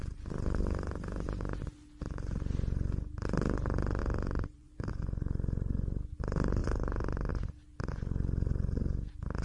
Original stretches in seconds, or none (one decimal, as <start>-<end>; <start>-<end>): 0.0-4.0; 4.9-6.6; 7.3-9.4